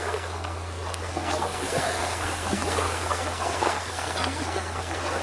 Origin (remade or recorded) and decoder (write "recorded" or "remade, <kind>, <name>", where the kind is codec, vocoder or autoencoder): remade, codec, SNAC